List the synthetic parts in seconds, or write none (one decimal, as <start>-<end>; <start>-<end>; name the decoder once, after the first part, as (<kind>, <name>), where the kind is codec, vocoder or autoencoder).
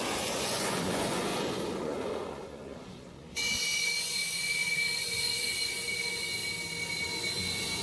0.0-6.4 (vocoder, Vocos); 7.1-7.8